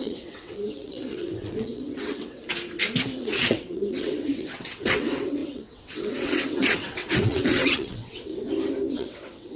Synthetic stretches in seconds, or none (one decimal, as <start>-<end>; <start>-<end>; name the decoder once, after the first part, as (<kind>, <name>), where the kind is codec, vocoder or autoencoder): 0.0-2.4 (vocoder, WaveNeXt); 3.2-8.3; 8.9-9.6